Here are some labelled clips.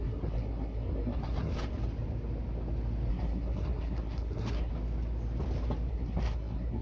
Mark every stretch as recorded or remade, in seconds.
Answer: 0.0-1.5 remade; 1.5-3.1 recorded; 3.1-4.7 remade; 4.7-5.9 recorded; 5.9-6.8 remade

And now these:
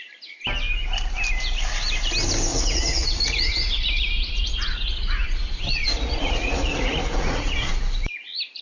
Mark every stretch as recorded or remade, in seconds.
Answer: 0.0-2.5 recorded; 2.5-7.7 remade; 7.7-8.6 recorded

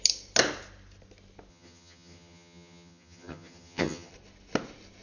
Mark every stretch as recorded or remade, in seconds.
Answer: 0.0-1.5 recorded; 1.5-4.1 remade; 4.1-5.0 recorded

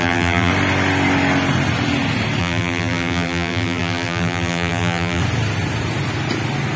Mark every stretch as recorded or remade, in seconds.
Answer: 0.0-0.5 remade; 0.5-2.4 recorded; 2.4-5.2 remade; 5.2-6.8 recorded

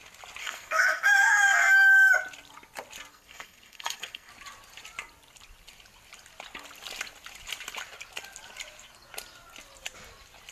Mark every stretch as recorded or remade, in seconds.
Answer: 0.0-0.4 recorded; 0.4-2.1 remade; 2.1-3.1 recorded; 3.1-4.3 remade; 4.3-10.5 recorded

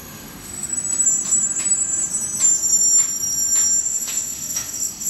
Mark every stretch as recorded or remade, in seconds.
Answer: 0.0-0.7 remade; 0.7-3.8 recorded; 3.8-5.1 remade

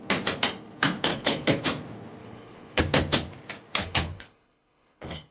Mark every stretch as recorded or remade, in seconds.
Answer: 0.0-1.1 recorded; 1.1-1.6 remade; 1.6-2.2 recorded; 2.2-2.8 remade; 2.8-3.8 recorded; 3.8-5.3 remade

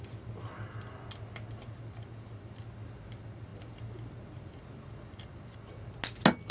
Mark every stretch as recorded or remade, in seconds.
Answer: 0.0-6.5 recorded